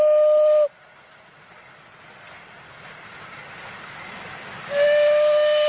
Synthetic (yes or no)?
no